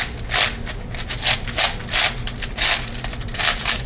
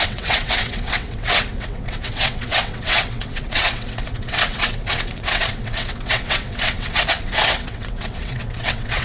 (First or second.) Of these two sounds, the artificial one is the second